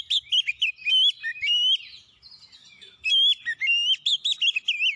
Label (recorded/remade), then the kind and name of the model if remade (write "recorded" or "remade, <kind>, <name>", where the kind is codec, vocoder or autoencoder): recorded